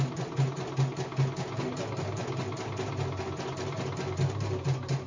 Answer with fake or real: real